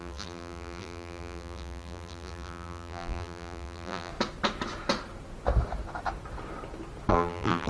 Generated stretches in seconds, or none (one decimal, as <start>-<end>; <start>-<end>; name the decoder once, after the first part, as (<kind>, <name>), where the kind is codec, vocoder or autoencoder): 0.0-4.1 (vocoder, BigVGAN v2); 7.1-7.7